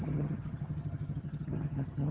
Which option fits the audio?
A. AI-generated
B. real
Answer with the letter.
A